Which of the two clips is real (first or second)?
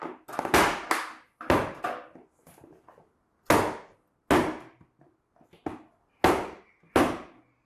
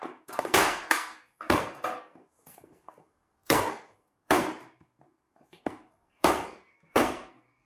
first